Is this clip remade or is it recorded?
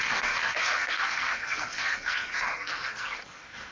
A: remade